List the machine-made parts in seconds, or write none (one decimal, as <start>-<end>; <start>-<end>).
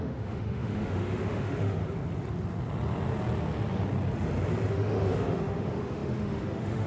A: 0.0-1.8; 4.7-6.9